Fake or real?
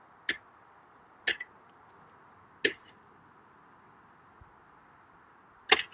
real